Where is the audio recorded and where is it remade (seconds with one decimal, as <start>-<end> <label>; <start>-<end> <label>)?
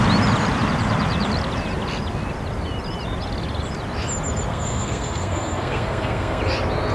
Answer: 0.0-4.5 recorded; 4.5-6.4 remade; 6.4-6.9 recorded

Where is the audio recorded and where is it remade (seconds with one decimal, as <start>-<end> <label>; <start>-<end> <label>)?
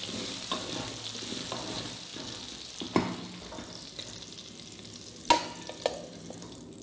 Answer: 0.0-6.8 recorded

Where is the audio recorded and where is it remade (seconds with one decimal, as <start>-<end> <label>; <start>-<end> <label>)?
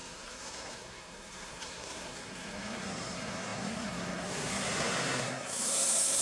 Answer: 0.0-6.2 remade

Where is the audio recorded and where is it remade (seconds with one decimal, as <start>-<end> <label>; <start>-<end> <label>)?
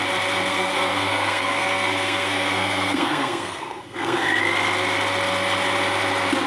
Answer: 0.0-0.5 recorded; 0.5-4.4 remade; 4.4-6.5 recorded